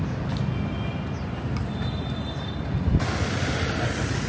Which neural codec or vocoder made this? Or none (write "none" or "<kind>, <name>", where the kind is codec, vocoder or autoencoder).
none